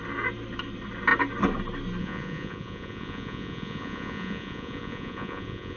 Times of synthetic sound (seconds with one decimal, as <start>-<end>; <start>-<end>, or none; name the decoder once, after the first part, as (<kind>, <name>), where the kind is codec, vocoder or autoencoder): 2.0-5.8 (vocoder, Vocos)